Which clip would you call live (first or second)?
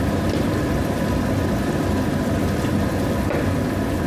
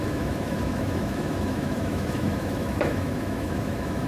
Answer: first